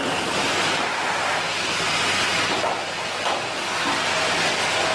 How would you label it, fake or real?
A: real